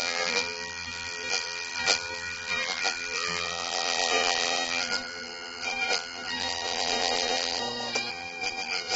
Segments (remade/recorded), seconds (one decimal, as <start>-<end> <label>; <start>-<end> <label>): 0.0-7.6 remade; 7.6-8.1 recorded; 8.1-9.0 remade